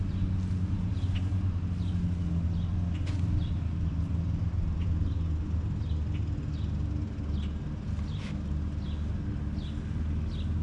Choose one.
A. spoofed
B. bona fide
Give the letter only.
B